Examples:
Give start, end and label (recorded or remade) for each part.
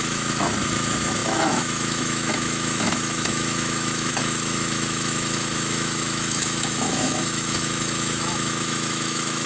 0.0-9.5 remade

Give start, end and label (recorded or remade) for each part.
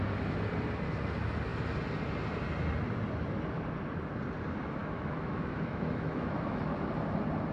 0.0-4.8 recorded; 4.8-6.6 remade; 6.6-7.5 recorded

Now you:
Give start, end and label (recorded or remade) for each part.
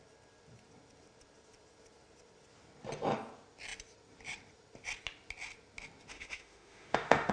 0.0-6.1 recorded; 6.1-7.3 remade